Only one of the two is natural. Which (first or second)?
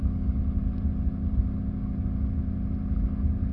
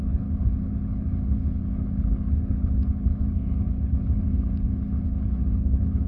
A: first